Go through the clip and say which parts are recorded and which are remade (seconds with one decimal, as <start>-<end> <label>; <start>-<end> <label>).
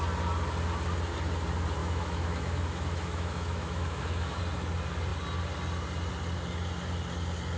0.0-1.8 recorded; 1.8-4.4 remade; 4.4-7.6 recorded